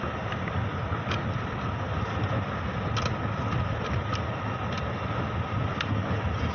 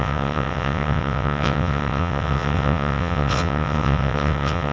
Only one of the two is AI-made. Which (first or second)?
second